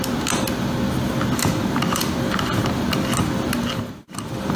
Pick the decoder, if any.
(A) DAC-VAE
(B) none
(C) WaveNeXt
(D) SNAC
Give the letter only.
B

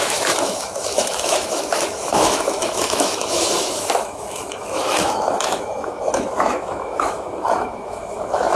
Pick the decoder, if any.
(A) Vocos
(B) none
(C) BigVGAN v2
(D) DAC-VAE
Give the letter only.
D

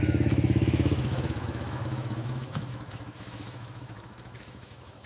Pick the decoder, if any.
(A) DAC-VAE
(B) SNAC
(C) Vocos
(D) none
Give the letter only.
A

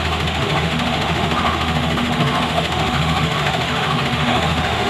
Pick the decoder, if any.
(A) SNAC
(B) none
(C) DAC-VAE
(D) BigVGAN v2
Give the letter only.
C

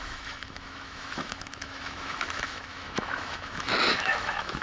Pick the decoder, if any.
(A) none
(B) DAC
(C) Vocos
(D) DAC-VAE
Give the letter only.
D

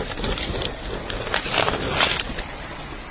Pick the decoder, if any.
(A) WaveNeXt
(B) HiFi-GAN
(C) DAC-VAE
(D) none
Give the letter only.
D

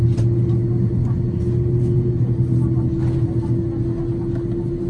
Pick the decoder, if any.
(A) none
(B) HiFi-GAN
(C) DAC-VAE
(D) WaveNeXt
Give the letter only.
A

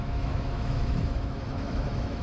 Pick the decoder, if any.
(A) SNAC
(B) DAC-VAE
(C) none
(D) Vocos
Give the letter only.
B